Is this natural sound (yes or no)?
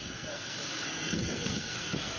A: no